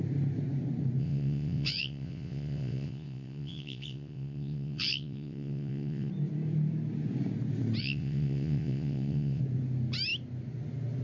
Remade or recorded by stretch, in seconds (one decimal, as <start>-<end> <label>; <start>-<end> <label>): 0.0-1.0 recorded; 1.0-6.1 remade; 6.1-7.8 recorded; 7.8-9.4 remade; 9.4-11.0 recorded